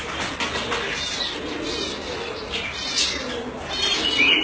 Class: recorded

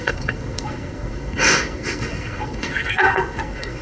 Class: remade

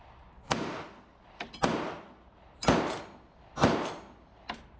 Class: recorded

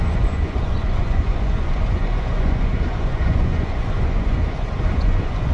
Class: remade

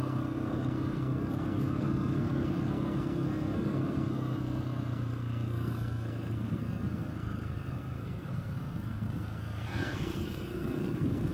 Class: remade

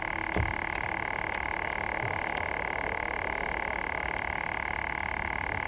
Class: recorded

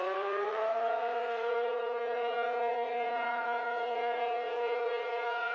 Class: remade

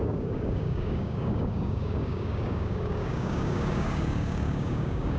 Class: remade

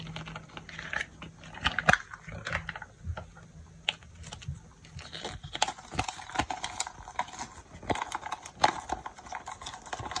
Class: recorded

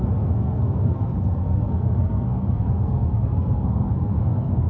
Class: remade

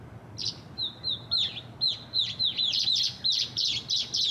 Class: recorded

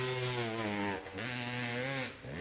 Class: recorded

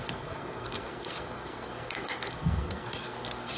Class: remade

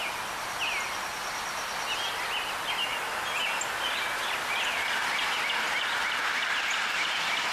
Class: recorded